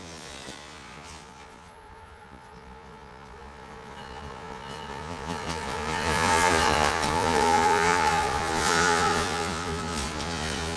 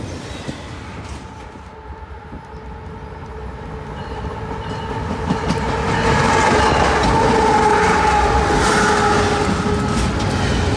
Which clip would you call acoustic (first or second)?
second